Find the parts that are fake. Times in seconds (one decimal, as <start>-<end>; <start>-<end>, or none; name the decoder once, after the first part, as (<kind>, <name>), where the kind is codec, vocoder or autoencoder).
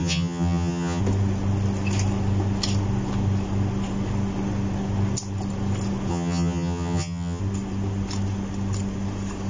0.0-1.0 (vocoder, HiFi-GAN); 6.1-7.4